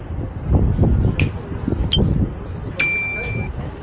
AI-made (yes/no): no